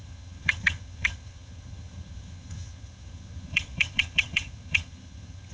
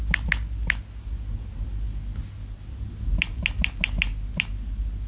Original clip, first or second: second